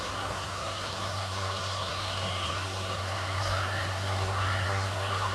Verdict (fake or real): fake